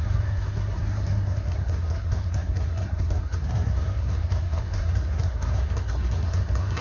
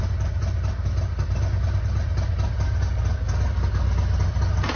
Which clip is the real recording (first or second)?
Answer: second